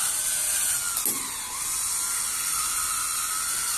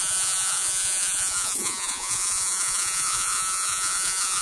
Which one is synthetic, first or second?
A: second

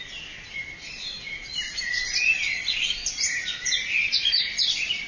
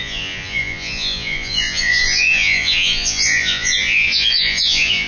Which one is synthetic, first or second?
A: second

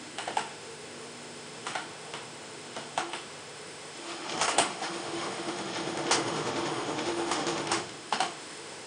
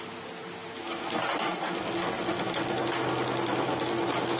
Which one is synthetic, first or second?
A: first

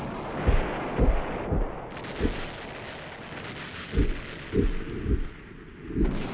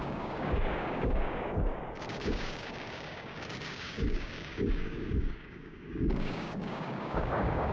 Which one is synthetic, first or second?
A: second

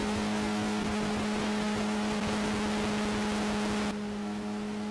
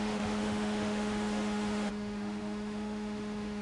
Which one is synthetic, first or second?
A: second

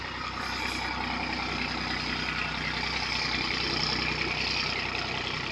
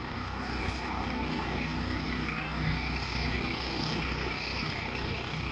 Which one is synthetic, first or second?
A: second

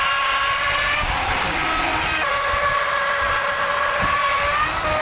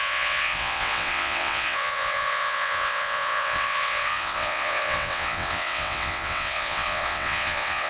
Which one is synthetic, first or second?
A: second